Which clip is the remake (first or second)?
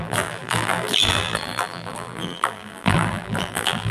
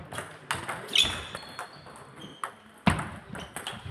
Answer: first